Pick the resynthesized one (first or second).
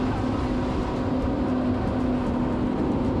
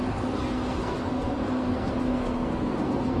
second